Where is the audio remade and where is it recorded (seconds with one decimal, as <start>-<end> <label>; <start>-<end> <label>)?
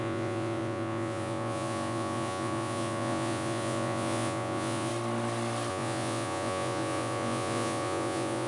0.0-4.9 remade; 4.9-5.7 recorded; 5.7-8.5 remade